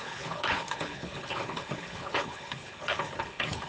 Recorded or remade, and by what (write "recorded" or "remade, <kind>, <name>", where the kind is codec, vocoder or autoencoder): remade, codec, HILCodec